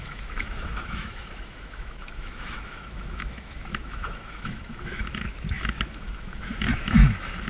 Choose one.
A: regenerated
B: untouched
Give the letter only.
A